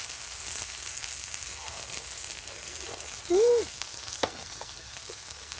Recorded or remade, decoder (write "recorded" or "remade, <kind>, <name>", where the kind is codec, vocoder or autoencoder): remade, codec, SNAC